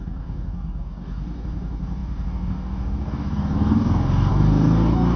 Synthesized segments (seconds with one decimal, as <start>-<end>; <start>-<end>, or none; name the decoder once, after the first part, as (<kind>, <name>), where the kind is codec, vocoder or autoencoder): 0.0-5.2 (codec, DAC)